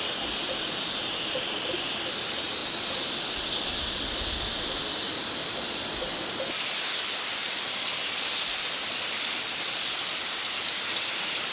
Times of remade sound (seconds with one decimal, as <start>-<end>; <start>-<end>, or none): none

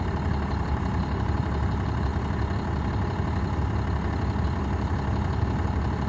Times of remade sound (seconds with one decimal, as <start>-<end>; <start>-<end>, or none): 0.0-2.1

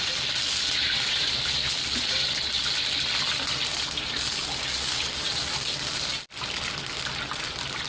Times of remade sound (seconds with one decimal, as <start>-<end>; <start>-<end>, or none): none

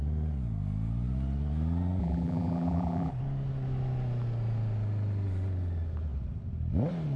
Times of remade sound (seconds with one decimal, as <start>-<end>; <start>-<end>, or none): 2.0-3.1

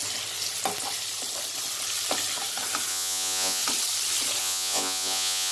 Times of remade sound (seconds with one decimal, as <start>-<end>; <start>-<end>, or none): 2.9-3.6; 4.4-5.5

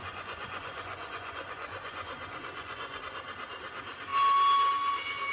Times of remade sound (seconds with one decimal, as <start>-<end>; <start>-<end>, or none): 0.0-3.0